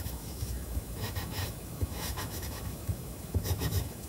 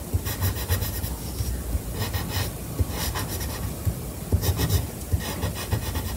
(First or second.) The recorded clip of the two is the second